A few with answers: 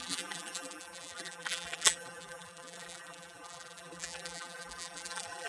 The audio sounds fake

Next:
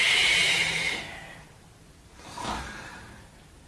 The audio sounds fake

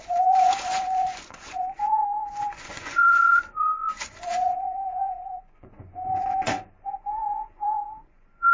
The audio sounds fake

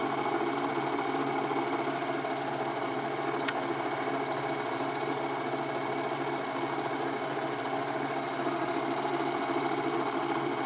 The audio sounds real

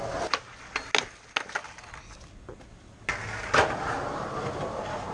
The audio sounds real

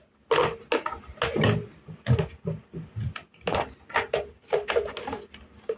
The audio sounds real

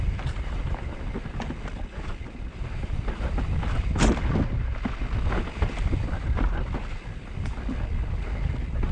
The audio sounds real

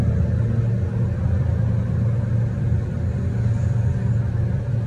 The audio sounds real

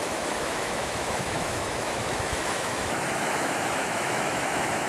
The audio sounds fake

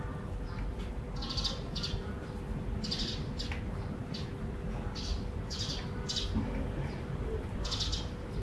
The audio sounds real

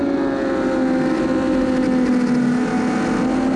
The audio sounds real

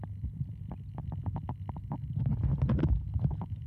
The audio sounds real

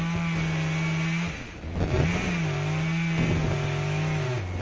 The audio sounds real